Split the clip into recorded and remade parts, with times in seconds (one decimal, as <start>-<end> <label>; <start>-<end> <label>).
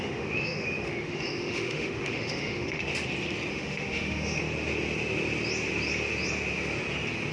0.0-2.9 remade; 2.9-3.5 recorded; 3.5-4.4 remade; 4.4-7.3 recorded